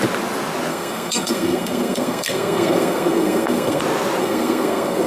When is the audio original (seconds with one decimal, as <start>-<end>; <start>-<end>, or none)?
0.0-0.7; 3.8-4.2